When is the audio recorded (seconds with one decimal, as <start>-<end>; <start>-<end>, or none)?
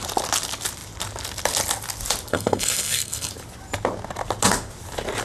0.0-2.3; 3.3-5.2